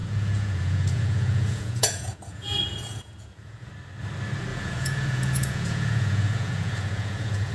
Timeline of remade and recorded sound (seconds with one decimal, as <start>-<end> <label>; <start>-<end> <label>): 0.0-3.7 remade; 3.7-4.5 recorded; 4.5-7.5 remade